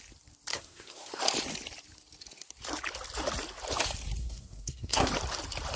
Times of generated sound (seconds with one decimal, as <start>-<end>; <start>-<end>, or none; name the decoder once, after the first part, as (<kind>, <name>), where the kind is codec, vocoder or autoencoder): 0.5-1.2 (codec, SNAC); 4.2-5.1